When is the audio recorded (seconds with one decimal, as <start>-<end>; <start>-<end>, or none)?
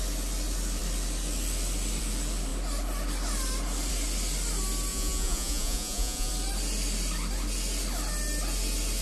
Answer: 0.0-4.9; 6.3-9.0